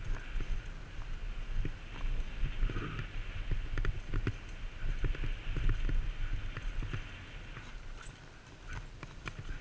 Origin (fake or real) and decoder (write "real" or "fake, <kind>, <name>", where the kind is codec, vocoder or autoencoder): real